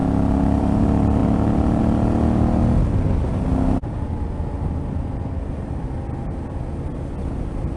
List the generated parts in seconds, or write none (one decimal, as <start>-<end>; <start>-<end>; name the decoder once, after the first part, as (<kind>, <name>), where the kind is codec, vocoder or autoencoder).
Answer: none